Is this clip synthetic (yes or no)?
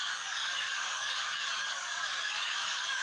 yes